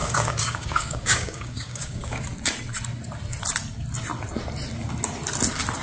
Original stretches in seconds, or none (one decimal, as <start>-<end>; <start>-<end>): 2.2-5.8